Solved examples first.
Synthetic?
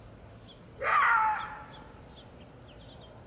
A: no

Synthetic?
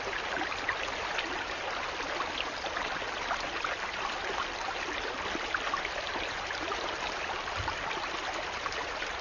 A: no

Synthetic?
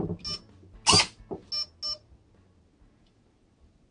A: no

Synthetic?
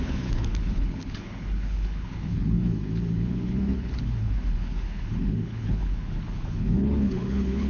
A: yes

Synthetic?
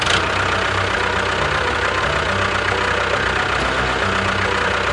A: no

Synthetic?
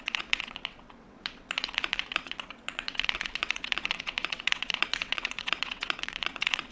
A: yes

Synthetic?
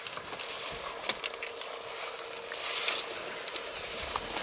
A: no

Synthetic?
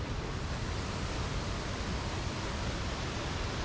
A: no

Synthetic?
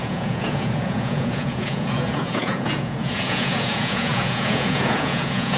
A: yes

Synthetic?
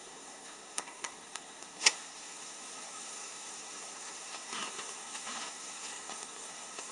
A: yes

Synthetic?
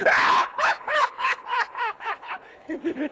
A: yes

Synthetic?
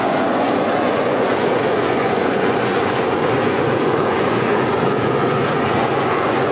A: yes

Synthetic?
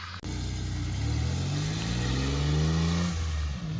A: no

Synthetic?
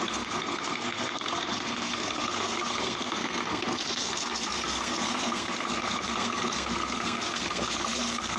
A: yes